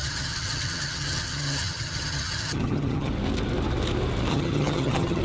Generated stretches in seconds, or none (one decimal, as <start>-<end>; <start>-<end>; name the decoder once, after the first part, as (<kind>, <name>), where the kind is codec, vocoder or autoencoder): 0.0-3.1 (vocoder, HiFi-GAN); 4.3-5.2